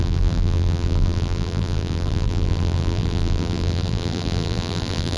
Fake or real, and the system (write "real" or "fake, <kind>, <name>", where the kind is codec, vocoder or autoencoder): fake, vocoder, BigVGAN v2